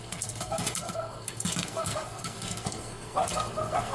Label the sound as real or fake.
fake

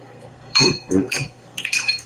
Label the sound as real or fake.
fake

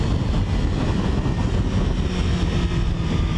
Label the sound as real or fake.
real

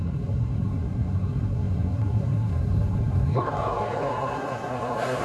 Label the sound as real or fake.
fake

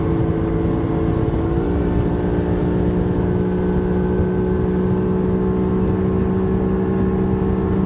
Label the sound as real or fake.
real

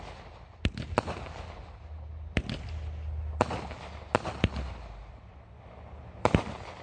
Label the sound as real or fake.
real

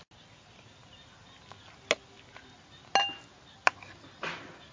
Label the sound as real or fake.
real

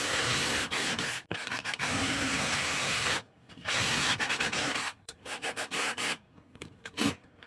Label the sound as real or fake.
fake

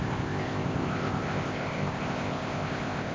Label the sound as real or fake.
fake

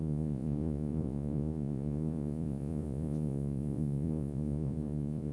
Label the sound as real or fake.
fake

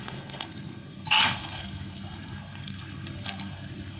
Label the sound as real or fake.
fake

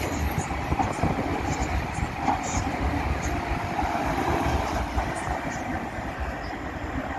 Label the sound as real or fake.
fake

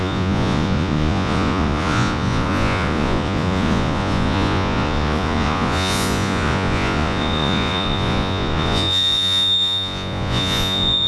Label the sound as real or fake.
fake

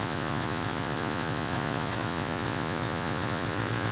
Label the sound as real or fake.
fake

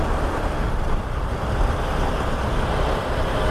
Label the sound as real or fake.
real